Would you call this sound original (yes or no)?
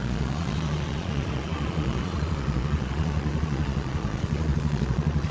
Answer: no